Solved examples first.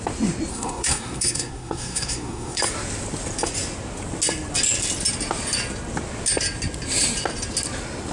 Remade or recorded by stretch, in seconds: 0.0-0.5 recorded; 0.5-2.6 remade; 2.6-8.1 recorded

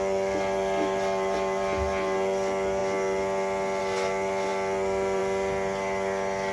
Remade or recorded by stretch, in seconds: 0.0-6.5 recorded

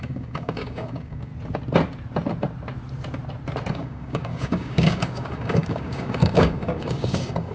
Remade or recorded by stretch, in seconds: 0.0-1.3 remade; 1.3-3.7 recorded; 3.7-7.5 remade

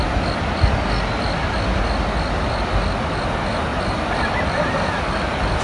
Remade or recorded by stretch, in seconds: 0.0-3.7 recorded; 3.7-4.7 remade; 4.7-5.6 recorded

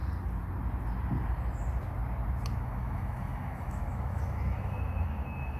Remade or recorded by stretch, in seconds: 0.0-2.6 recorded; 2.6-5.6 remade